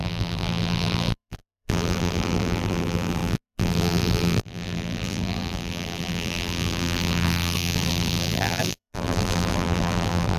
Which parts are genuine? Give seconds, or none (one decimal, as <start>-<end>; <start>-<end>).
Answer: none